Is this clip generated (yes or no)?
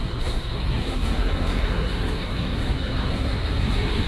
yes